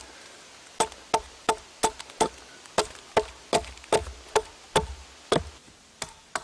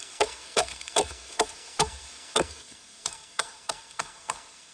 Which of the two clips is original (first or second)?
first